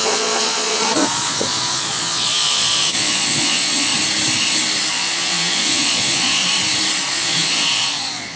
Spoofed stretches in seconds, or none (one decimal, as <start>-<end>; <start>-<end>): 0.0-3.9; 4.9-6.4; 7.1-8.4